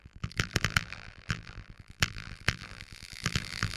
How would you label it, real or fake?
fake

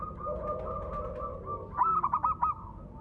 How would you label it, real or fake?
real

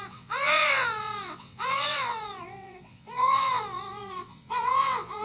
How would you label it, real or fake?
fake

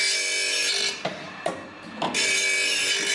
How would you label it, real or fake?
real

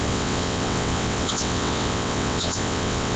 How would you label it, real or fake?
fake